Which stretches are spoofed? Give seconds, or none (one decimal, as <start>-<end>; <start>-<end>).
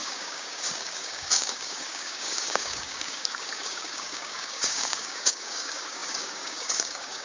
0.0-7.2